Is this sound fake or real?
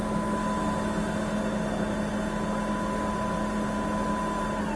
real